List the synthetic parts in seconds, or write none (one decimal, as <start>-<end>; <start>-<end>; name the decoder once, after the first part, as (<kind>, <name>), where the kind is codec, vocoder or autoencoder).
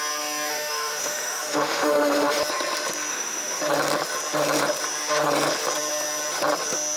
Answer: 0.5-2.4 (autoencoder, DAC-VAE); 3.1-3.6